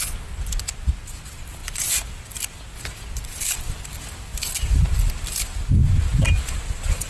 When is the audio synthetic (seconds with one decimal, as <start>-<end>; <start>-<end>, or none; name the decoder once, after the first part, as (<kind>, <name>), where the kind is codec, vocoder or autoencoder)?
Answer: none